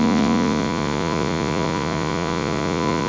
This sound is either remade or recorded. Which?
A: remade